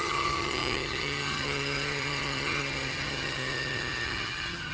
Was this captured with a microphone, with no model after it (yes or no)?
no